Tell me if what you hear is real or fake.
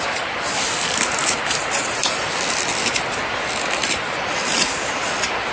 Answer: real